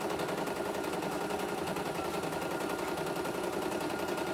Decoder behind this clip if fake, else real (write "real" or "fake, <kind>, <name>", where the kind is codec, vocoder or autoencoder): real